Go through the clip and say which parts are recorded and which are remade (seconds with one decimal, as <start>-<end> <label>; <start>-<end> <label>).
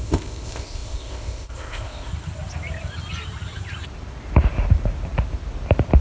0.0-2.1 remade; 2.1-6.0 recorded